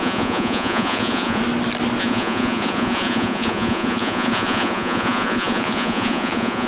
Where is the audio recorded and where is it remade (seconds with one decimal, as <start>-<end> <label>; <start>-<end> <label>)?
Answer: 0.0-1.4 remade; 1.4-2.0 recorded; 2.0-6.7 remade